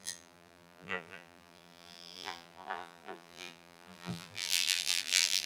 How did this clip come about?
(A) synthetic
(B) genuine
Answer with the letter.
A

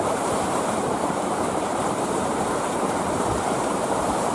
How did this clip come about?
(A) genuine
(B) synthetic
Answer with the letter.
B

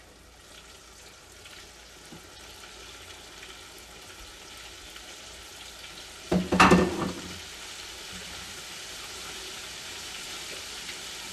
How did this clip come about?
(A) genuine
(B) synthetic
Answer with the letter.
A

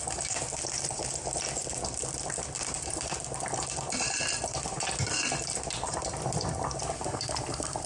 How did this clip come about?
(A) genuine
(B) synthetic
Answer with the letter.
B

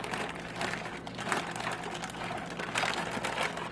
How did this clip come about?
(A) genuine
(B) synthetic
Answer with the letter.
A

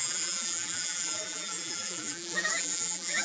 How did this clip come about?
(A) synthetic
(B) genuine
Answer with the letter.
A